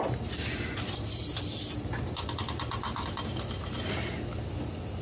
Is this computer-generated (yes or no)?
no